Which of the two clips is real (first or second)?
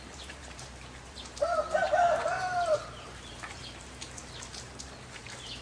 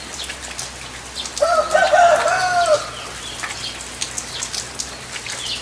second